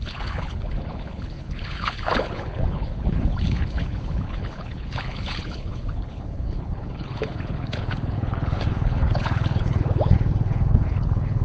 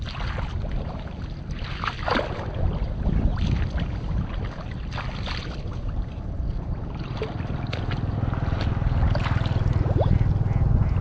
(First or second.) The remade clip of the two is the first